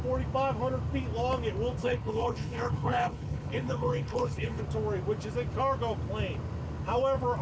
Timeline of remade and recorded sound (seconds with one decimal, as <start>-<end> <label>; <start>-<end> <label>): 0.0-1.8 recorded; 1.8-4.6 remade; 4.6-7.4 recorded